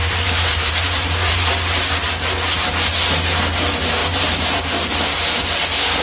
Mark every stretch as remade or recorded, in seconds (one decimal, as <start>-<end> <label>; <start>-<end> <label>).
0.0-1.5 remade; 1.5-4.0 recorded; 4.0-4.6 remade; 4.6-6.0 recorded